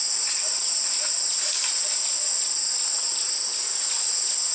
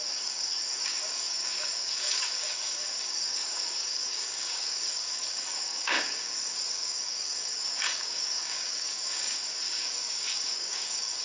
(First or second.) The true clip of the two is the first